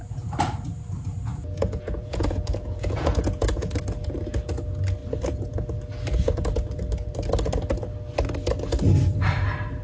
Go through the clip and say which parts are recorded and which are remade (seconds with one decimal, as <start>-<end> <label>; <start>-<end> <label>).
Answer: 0.0-1.3 recorded; 1.3-3.7 remade; 3.7-9.8 recorded